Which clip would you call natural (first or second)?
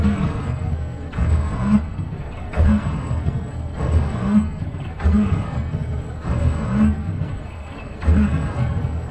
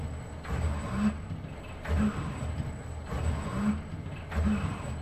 second